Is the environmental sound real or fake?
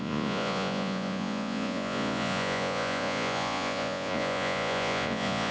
fake